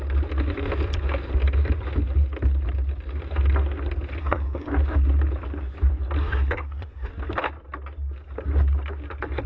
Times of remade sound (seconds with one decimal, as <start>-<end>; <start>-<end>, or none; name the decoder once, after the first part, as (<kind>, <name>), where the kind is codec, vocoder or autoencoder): 4.2-4.7 (codec, SNAC); 6.2-7.1